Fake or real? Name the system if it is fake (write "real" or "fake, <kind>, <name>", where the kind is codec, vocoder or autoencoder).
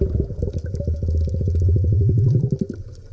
real